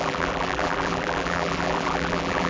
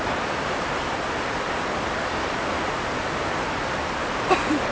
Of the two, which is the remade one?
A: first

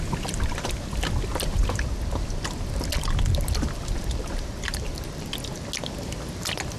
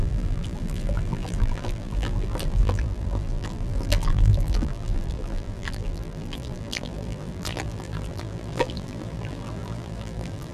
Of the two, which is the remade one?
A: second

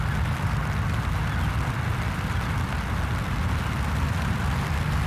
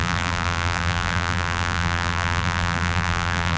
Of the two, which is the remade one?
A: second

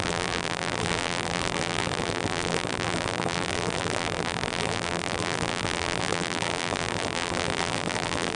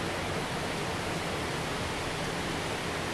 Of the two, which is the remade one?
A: first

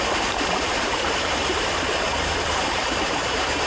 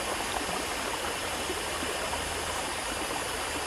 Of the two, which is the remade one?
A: first